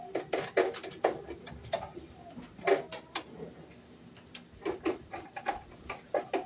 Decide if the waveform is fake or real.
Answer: real